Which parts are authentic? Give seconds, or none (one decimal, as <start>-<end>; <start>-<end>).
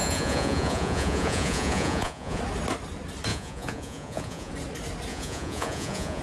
2.4-3.3; 4.5-5.1